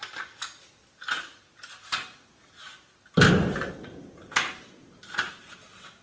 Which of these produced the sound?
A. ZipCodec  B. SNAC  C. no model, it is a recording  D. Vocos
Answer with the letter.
C